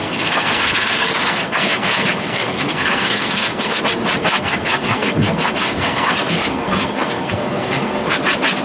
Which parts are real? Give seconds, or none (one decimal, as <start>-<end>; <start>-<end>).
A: 3.8-4.2; 8.2-8.6